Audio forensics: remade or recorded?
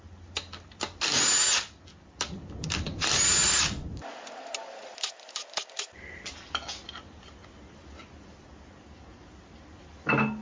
recorded